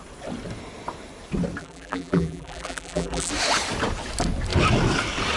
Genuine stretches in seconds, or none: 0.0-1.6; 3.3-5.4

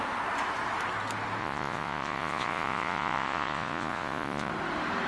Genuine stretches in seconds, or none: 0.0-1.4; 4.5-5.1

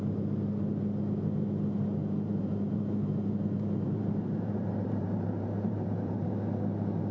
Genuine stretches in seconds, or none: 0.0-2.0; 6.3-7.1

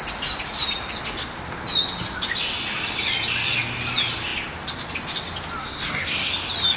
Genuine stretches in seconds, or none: 0.0-5.6; 6.3-6.8